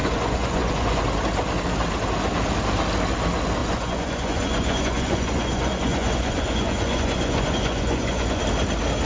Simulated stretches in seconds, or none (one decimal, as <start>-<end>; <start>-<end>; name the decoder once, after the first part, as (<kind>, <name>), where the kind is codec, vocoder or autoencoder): 0.0-1.0 (vocoder, Vocos); 3.6-8.4